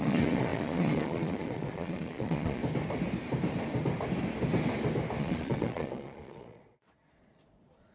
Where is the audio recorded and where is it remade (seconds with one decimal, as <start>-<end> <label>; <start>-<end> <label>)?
0.0-2.6 remade; 2.6-5.2 recorded; 5.2-7.9 remade